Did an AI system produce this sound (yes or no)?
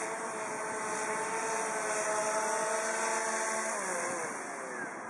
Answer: no